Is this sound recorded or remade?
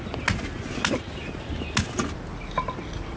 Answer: recorded